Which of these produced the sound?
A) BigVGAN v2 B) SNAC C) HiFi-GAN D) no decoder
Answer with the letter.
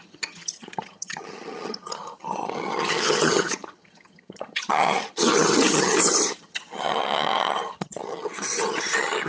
C